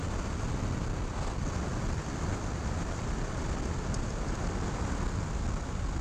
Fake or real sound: real